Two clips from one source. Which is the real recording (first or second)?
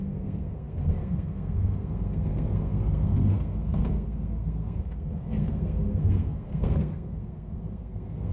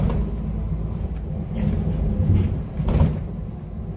second